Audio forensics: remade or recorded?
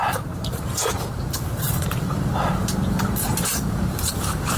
remade